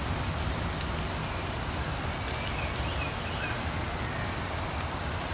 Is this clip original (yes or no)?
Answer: yes